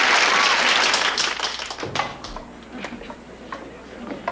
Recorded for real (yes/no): yes